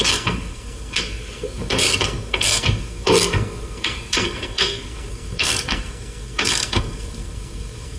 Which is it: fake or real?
fake